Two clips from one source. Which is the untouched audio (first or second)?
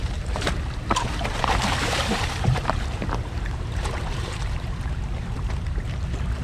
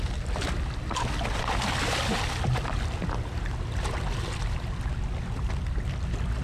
second